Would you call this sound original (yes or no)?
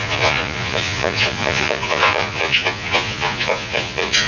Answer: no